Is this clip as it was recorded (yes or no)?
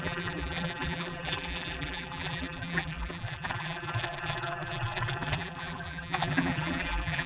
no